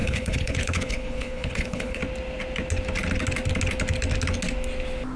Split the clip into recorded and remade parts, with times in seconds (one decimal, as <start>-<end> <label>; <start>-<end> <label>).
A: 0.0-2.0 remade; 2.0-5.2 recorded